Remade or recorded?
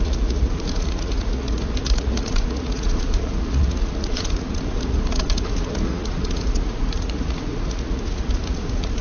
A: remade